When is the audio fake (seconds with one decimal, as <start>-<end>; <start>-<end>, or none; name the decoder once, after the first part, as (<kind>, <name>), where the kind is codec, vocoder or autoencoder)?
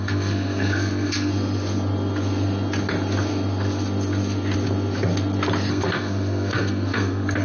0.0-1.3 (codec, SNAC); 5.7-7.4